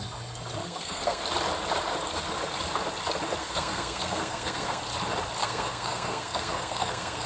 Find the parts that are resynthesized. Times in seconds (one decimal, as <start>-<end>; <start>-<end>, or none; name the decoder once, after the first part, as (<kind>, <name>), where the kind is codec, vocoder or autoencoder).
0.6-1.2 (codec, SNAC); 3.4-4.8; 5.4-7.3